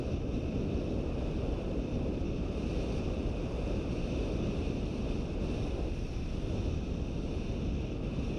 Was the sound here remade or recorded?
recorded